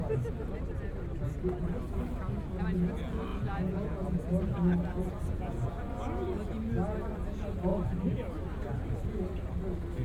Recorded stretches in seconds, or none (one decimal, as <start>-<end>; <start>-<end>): 0.0-3.3; 4.4-5.3; 5.9-10.0